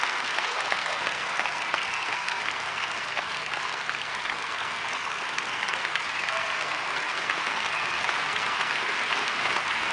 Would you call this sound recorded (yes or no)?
no